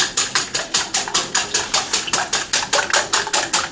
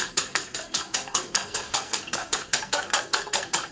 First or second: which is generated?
second